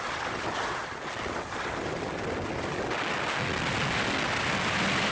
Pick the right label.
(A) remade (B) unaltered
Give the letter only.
B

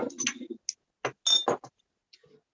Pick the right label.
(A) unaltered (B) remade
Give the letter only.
A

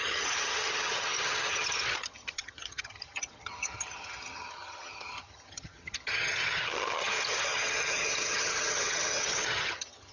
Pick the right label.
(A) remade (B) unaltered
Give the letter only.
A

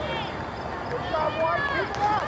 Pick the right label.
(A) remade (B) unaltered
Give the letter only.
B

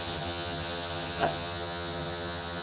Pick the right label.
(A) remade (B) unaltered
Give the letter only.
A